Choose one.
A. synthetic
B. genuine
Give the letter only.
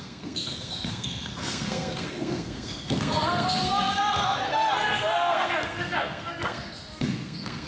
A